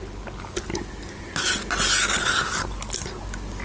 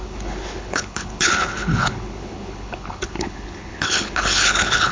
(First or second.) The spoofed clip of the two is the second